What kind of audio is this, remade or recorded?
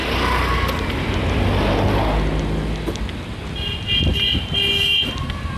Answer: recorded